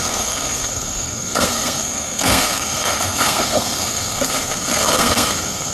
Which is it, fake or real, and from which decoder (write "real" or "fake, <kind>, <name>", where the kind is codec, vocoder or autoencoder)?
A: fake, codec, SNAC